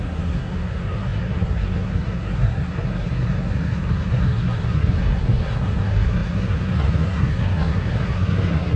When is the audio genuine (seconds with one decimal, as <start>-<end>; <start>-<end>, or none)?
none